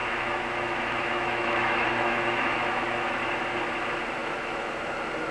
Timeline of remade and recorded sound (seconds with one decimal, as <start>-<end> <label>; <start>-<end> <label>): 0.0-3.2 remade; 3.2-4.2 recorded; 4.2-4.7 remade; 4.7-5.3 recorded

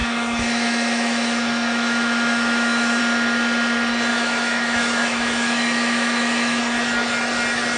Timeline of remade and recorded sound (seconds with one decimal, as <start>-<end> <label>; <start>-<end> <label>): 0.0-3.0 remade; 3.0-4.1 recorded; 4.1-6.6 remade; 6.6-7.8 recorded

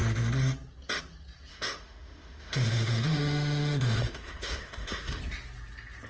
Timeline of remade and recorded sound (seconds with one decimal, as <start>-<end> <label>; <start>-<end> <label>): 0.0-1.5 recorded; 1.5-5.2 remade; 5.2-6.1 recorded

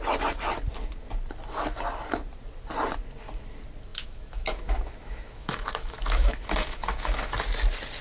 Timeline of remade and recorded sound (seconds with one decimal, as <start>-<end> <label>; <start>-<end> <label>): 0.0-3.9 recorded; 3.9-7.3 remade; 7.3-8.0 recorded

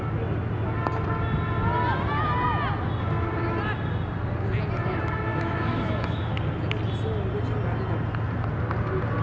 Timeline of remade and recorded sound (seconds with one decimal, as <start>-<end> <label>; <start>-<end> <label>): 0.0-5.3 recorded; 5.3-6.4 remade; 6.4-9.2 recorded

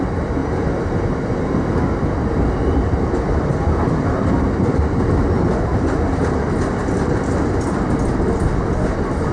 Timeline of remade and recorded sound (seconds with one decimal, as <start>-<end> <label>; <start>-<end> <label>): 0.0-9.3 recorded

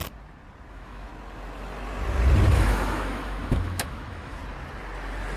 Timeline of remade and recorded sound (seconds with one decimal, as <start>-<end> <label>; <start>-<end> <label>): 0.0-0.7 recorded; 0.7-1.1 remade; 1.1-2.5 recorded; 2.5-4.4 remade; 4.4-5.4 recorded

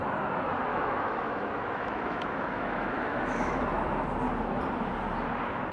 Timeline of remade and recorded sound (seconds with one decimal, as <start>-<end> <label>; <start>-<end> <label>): 0.0-0.7 recorded; 0.7-3.7 remade; 3.7-5.7 recorded